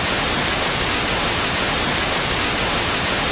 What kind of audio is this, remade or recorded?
recorded